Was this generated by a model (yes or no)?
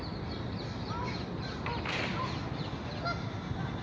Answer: no